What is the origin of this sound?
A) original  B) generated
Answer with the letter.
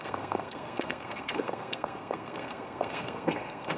B